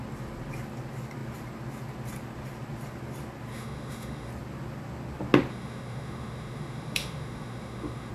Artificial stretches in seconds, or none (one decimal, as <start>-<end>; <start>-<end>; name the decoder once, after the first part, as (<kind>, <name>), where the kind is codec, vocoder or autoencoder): 3.5-4.3 (autoencoder, DAC-VAE); 5.5-8.1